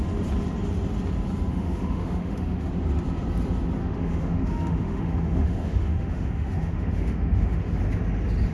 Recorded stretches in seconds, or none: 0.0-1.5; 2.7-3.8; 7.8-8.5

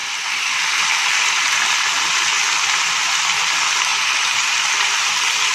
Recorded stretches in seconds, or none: 0.0-5.5

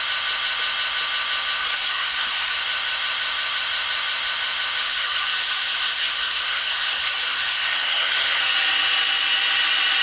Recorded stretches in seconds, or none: 0.0-1.6; 2.6-4.8; 8.4-10.0

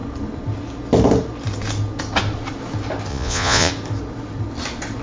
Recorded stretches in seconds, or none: 0.0-3.1; 3.7-5.0

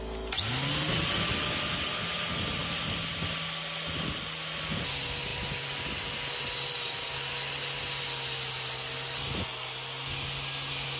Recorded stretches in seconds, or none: 0.0-11.0

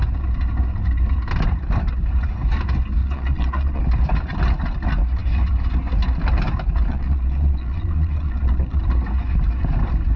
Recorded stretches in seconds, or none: 0.0-3.0; 3.8-6.9; 8.8-10.2

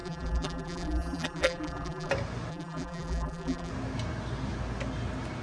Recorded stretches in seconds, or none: 2.1-2.5; 3.7-5.4